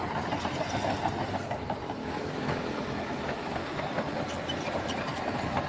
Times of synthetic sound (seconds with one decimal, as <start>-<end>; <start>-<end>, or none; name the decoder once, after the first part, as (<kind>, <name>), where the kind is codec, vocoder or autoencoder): 2.0-3.8 (autoencoder, DAC-VAE)